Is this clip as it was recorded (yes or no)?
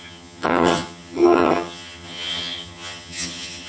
no